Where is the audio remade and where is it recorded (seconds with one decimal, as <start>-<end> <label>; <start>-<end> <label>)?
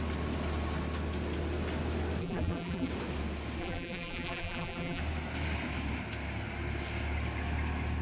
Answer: 0.0-2.2 recorded; 2.2-2.9 remade; 2.9-3.6 recorded; 3.6-5.0 remade; 5.0-8.0 recorded